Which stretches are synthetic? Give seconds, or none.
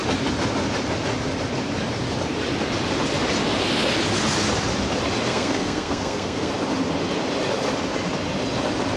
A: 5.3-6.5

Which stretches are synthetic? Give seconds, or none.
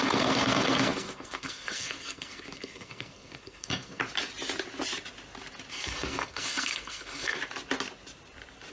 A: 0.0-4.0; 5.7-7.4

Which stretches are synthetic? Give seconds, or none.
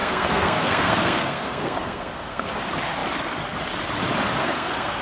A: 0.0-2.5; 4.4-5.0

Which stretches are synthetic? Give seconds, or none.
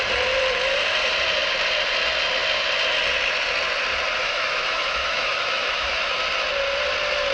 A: 4.2-6.2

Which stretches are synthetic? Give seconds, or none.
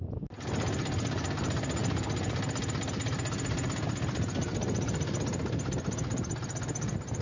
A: none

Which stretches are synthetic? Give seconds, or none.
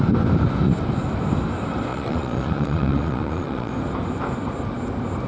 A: 1.9-3.7